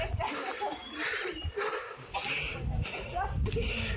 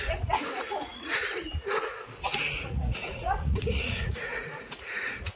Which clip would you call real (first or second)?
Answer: first